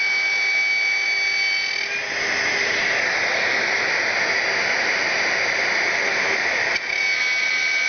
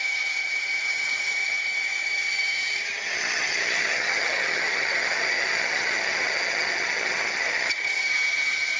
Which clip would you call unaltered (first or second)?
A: first